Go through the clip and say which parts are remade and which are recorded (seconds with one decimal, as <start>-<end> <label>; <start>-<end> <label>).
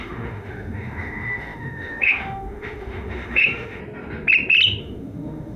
0.0-3.8 remade; 3.8-4.8 recorded; 4.8-5.6 remade